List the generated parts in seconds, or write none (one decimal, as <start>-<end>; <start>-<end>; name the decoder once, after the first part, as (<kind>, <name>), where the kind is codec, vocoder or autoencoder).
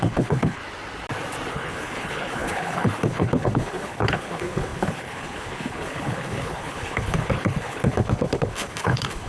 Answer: 0.0-0.6 (codec, HILCodec); 1.5-9.3